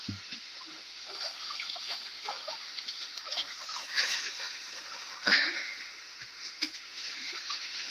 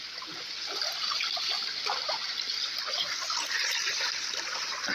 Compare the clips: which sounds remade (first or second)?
first